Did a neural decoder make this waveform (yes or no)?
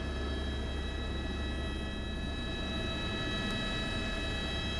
no